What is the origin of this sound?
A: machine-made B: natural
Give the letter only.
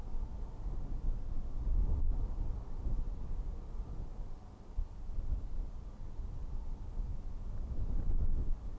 B